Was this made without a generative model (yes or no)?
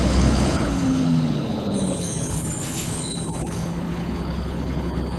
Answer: no